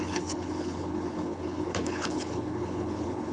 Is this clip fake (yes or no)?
yes